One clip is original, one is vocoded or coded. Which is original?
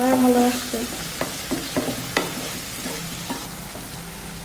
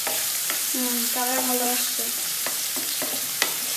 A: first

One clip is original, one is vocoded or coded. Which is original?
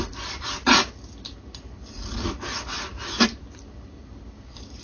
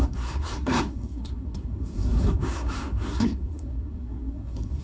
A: first